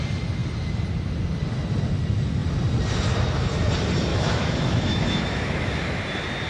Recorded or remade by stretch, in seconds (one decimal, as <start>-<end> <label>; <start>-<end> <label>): 0.0-4.1 recorded; 4.1-6.0 remade; 6.0-6.5 recorded